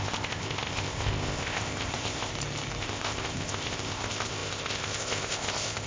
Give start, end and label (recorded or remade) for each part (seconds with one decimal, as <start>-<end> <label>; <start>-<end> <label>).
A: 0.0-2.3 remade; 2.3-2.8 recorded; 2.8-5.9 remade